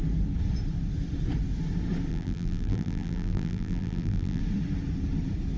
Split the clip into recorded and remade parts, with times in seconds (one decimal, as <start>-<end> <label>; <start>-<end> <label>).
0.0-2.1 recorded; 2.1-4.4 remade; 4.4-5.6 recorded